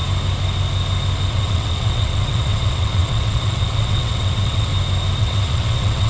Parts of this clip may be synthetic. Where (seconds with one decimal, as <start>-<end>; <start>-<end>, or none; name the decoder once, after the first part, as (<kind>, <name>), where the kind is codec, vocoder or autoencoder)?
1.3-4.7 (vocoder, WaveNeXt); 5.2-6.1